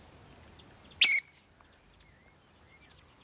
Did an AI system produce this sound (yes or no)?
no